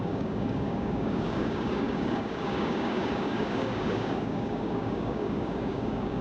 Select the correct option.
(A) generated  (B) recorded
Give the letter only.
A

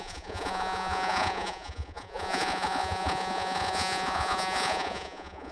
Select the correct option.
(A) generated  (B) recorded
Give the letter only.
A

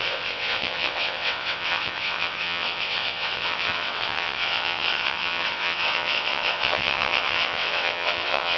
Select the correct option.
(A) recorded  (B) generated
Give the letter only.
B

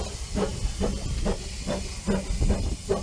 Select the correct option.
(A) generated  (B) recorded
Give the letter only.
B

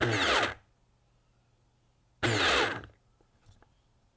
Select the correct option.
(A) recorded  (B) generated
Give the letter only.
A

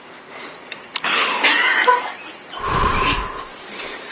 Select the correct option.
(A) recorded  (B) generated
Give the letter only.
A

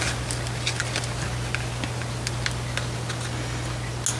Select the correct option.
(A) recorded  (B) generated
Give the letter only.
A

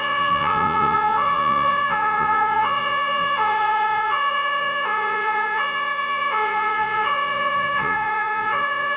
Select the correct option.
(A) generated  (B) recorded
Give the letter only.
A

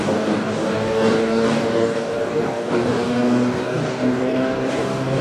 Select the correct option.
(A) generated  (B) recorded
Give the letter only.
A